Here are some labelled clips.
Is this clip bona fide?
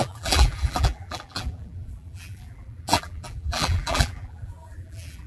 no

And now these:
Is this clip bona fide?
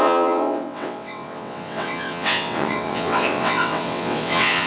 no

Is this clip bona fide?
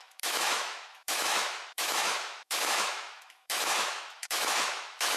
no